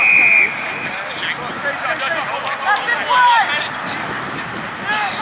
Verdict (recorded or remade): recorded